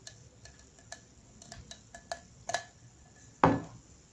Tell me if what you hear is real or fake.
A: real